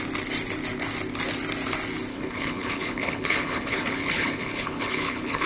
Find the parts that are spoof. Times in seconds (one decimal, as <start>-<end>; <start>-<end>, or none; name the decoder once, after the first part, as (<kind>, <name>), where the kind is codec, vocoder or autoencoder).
2.1-5.5 (codec, HILCodec)